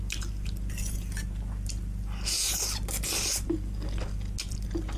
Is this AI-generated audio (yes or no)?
no